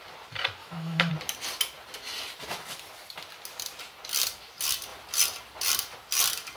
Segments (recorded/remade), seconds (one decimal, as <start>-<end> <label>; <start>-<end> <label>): 0.0-0.6 recorded; 0.6-1.1 remade; 1.1-6.6 recorded

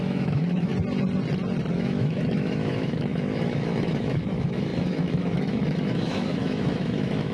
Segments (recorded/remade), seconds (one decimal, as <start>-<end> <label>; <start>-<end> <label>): 0.0-0.7 remade; 0.7-1.7 recorded; 1.7-7.3 remade

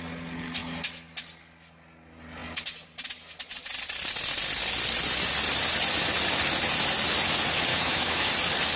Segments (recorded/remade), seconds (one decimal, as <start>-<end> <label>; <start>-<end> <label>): 0.0-7.7 recorded; 7.7-8.3 remade; 8.3-8.8 recorded

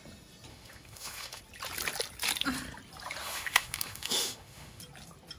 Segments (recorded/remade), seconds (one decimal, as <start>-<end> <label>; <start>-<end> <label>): 0.0-0.5 recorded; 0.5-1.4 remade; 1.4-3.2 recorded; 3.2-4.8 remade; 4.8-5.4 recorded